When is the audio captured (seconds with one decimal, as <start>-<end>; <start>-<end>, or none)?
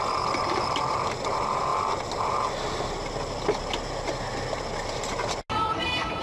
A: 0.0-6.2